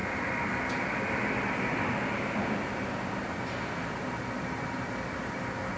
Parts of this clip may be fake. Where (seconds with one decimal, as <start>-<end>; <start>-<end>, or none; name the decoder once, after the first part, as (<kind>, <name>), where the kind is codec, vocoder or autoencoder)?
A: none

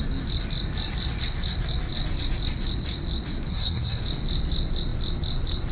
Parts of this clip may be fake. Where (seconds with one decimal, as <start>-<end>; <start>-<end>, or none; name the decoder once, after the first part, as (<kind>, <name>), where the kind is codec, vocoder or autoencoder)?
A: 3.5-4.0 (codec, SNAC)

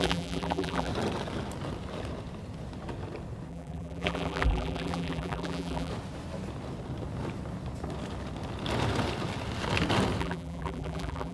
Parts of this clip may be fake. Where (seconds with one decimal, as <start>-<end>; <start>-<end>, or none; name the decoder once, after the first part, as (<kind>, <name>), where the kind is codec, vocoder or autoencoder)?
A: 0.0-0.9 (vocoder, BigVGAN v2); 3.5-5.9; 10.2-11.3

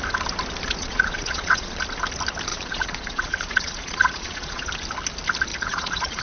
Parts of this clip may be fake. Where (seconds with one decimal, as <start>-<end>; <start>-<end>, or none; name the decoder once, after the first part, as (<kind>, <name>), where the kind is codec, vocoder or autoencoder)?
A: 0.8-1.8 (vocoder, Vocos); 2.5-4.7; 5.5-6.2

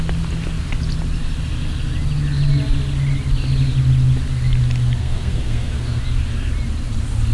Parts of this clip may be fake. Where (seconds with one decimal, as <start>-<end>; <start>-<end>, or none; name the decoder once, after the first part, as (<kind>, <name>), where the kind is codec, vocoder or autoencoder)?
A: 5.0-6.0 (codec, SNAC)